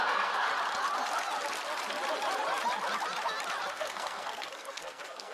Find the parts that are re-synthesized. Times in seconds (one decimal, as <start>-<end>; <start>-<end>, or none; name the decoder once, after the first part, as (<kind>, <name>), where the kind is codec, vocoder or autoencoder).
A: 0.0-0.5 (codec, SNAC); 3.7-5.3